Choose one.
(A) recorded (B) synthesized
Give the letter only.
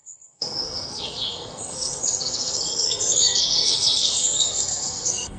B